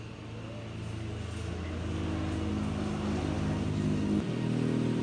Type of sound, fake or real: real